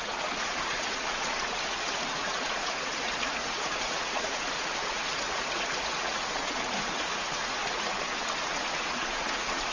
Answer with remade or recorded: remade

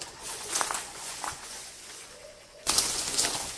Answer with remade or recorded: remade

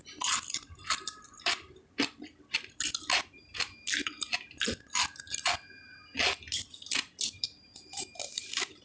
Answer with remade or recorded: remade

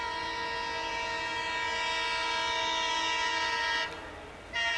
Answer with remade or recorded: recorded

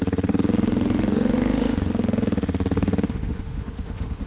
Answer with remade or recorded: remade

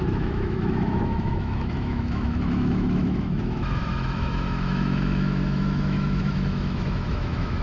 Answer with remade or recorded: remade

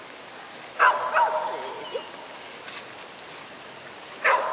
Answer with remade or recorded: recorded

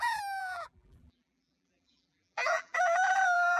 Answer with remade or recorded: remade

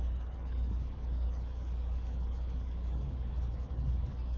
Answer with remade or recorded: remade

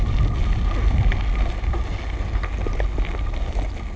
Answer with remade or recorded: recorded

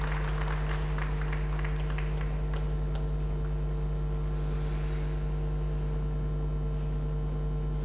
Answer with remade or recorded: recorded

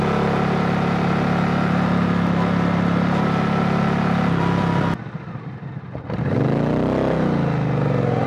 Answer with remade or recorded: recorded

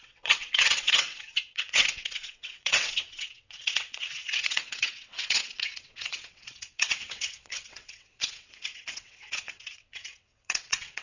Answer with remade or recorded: remade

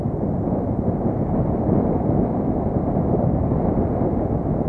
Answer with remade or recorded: recorded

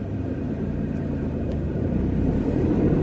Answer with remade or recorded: remade